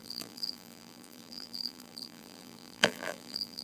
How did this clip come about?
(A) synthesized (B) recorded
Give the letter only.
A